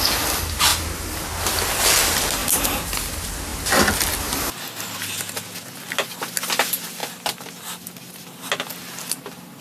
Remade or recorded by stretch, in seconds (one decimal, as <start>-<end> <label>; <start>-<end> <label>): 0.0-9.6 recorded